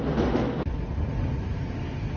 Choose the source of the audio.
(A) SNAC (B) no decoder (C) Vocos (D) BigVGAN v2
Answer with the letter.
B